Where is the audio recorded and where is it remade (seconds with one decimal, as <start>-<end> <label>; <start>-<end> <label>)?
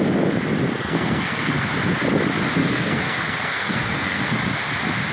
0.0-0.8 recorded; 0.8-1.7 remade; 1.7-2.6 recorded; 2.6-4.6 remade; 4.6-5.1 recorded